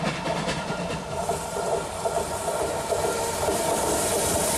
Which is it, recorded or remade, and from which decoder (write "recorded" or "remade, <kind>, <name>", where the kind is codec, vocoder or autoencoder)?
remade, vocoder, BigVGAN v2